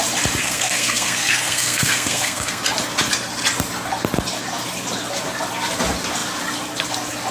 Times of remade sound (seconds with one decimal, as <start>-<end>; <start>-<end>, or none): 0.4-2.6